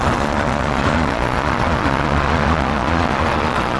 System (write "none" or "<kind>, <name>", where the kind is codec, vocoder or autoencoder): vocoder, Vocos